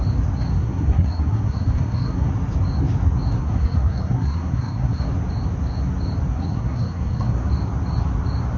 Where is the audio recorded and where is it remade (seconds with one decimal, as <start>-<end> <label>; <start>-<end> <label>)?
0.0-0.6 recorded; 0.6-2.3 remade; 2.3-3.4 recorded; 3.4-5.0 remade; 5.0-6.3 recorded; 6.3-7.5 remade; 7.5-8.6 recorded